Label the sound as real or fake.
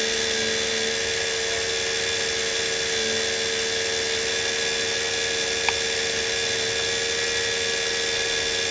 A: real